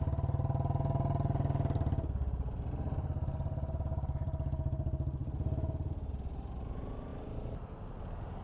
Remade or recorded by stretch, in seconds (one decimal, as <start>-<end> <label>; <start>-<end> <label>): 0.0-8.4 recorded